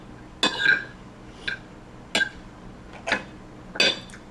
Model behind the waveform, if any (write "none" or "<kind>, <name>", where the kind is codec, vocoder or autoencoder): none